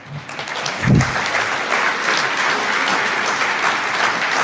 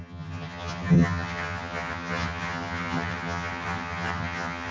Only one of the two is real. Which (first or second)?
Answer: first